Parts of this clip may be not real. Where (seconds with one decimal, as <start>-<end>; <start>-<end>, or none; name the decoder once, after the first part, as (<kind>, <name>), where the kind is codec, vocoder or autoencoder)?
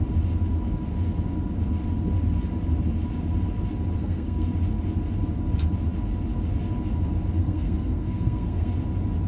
4.0-4.5 (codec, SNAC); 7.4-8.7